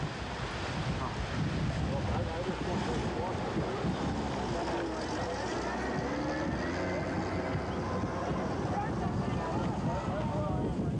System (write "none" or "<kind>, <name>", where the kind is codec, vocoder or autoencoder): none